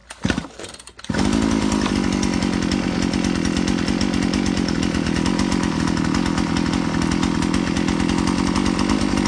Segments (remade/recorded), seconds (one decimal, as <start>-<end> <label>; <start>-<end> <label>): 0.0-9.3 recorded